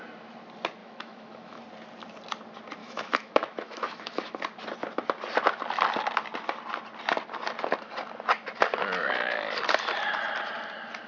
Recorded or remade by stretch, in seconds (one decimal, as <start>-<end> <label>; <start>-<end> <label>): 0.0-0.8 recorded; 0.8-1.6 remade; 1.6-2.8 recorded; 2.8-4.4 remade; 4.4-11.1 recorded